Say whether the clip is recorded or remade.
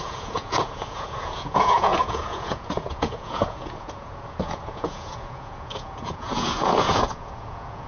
remade